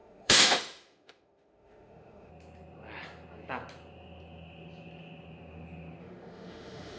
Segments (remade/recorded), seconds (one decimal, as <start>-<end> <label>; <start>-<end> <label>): 0.0-2.3 remade; 2.3-6.0 recorded; 6.0-7.0 remade